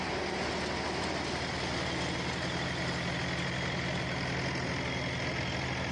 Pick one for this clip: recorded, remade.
recorded